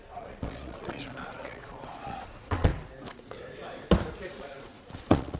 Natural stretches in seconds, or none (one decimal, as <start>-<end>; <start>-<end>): 2.7-4.3